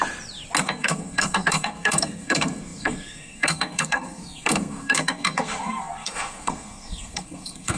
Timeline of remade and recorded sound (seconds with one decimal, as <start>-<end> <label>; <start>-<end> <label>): 0.0-0.6 recorded; 0.6-7.8 remade